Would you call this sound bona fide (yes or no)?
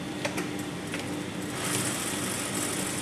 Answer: yes